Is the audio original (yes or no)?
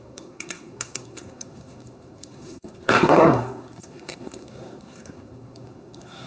no